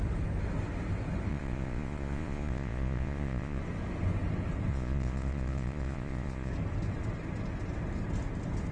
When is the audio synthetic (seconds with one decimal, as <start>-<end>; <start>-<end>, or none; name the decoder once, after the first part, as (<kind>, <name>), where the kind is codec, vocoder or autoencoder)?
1.3-3.6 (vocoder, Vocos); 4.7-6.5